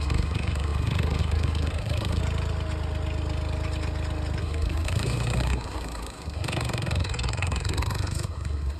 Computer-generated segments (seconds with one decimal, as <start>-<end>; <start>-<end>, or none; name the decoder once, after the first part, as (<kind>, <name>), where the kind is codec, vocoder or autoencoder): 0.0-2.2 (codec, SNAC); 4.4-8.8